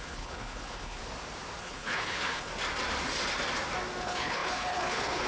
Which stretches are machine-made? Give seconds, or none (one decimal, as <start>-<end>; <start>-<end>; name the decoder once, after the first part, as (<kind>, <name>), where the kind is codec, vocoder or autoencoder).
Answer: 0.0-1.0 (codec, HILCodec); 1.6-2.5; 4.0-5.3